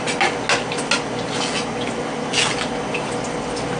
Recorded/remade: recorded